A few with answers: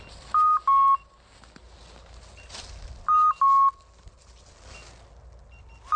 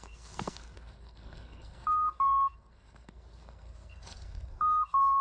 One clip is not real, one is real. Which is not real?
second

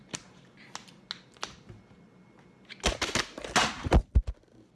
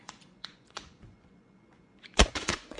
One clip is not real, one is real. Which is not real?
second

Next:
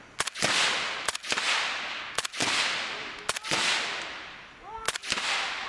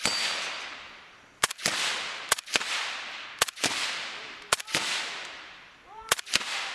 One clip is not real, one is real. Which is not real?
second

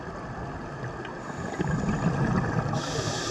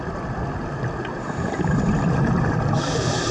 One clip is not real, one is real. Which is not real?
second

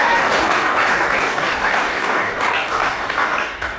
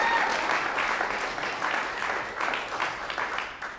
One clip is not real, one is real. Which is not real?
first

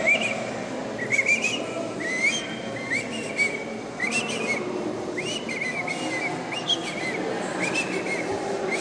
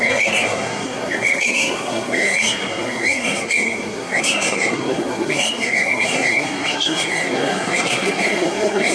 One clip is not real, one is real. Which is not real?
second